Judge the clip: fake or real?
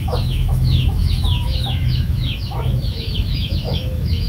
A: fake